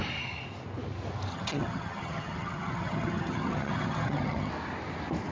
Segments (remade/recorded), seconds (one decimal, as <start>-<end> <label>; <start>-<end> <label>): 0.0-1.3 recorded; 1.3-4.5 remade; 4.5-5.3 recorded